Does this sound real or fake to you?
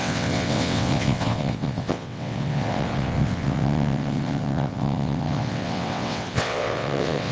fake